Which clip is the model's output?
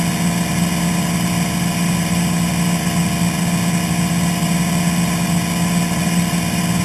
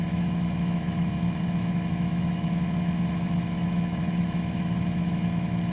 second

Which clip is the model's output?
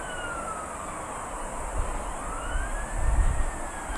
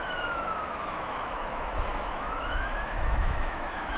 second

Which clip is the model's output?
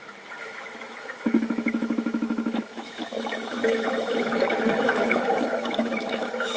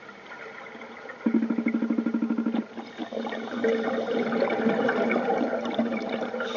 first